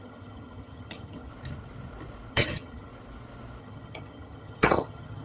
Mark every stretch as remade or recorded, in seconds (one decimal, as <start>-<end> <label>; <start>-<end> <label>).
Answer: 0.0-1.3 remade; 1.3-2.3 recorded; 2.3-2.9 remade; 2.9-3.6 recorded; 3.6-5.2 remade